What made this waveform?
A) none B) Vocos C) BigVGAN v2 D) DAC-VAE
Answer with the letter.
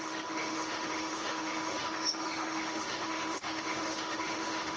D